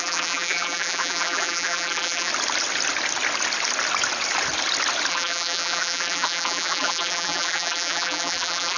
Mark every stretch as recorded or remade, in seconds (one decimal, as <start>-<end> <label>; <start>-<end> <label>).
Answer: 0.0-2.3 remade; 2.3-5.1 recorded; 5.1-8.8 remade